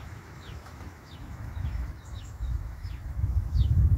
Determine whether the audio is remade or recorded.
remade